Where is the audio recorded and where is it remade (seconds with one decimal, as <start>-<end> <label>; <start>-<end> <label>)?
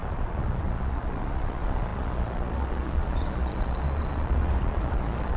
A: 0.0-5.4 remade